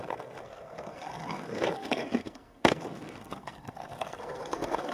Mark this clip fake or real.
fake